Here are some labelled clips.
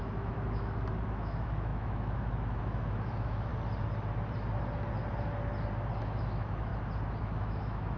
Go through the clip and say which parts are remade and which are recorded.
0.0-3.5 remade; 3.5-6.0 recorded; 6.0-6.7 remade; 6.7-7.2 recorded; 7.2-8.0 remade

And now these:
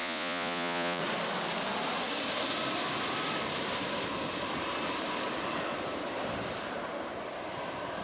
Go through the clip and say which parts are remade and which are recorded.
0.0-1.0 remade; 1.0-8.0 recorded